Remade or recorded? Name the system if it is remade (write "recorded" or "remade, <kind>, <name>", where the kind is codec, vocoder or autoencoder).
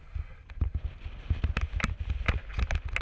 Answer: recorded